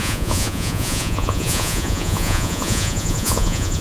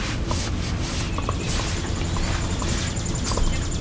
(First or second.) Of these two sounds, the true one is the second